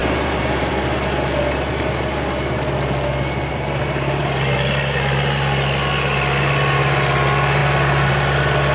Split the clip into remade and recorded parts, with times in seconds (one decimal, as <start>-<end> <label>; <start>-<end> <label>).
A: 0.0-0.7 remade; 0.7-3.5 recorded; 3.5-4.2 remade; 4.2-8.7 recorded